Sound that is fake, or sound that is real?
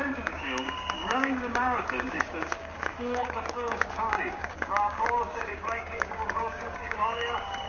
fake